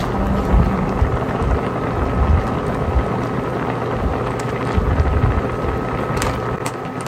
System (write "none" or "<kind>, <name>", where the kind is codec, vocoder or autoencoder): none